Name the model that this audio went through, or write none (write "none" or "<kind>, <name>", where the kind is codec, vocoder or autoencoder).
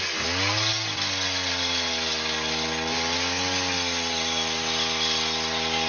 none